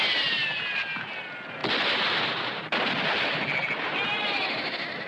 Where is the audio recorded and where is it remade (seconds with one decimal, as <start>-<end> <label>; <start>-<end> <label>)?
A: 0.0-5.1 recorded